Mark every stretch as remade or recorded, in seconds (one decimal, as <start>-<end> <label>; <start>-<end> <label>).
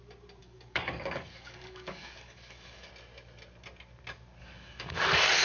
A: 0.0-0.4 recorded; 0.4-2.9 remade; 2.9-4.4 recorded; 4.4-5.0 remade; 5.0-5.4 recorded